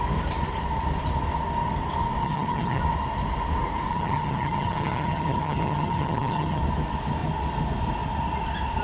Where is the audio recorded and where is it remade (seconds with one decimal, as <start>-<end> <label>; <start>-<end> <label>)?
0.0-2.2 recorded; 2.2-2.8 remade; 2.8-3.9 recorded; 3.9-6.6 remade; 6.6-8.8 recorded